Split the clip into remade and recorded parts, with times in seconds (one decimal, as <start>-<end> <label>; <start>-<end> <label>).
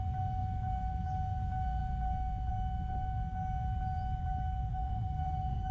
0.0-4.7 recorded; 4.7-5.7 remade